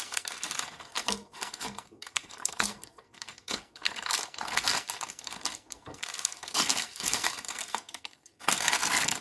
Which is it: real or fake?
fake